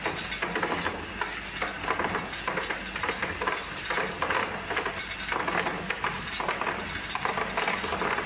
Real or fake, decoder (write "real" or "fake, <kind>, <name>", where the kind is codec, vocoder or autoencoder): real